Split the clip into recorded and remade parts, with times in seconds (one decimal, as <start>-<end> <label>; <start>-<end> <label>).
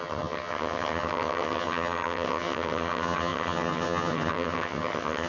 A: 0.0-5.3 remade